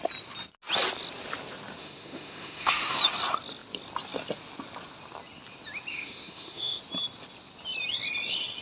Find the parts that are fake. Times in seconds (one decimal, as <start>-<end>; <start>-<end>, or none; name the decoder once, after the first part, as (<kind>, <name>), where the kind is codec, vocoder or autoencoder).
1.8-3.0 (autoencoder, DAC-VAE); 5.9-6.8